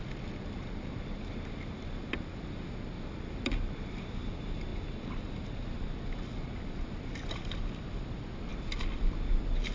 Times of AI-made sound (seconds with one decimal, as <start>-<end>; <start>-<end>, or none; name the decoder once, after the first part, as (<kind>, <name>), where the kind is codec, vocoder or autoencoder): none